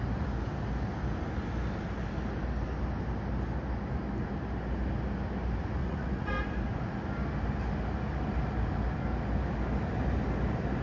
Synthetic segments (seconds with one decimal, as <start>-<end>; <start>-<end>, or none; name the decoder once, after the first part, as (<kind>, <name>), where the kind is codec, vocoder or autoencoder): 5.8-6.3 (vocoder, Vocos)